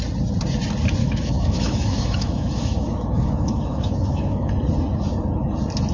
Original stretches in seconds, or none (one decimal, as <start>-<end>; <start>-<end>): 0.0-1.0; 4.5-5.9